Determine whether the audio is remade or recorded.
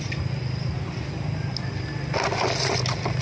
recorded